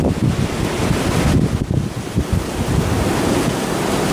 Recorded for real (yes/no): yes